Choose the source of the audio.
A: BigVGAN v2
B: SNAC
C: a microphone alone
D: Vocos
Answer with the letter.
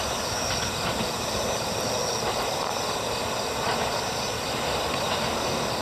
C